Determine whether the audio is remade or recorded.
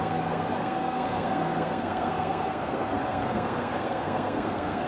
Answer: remade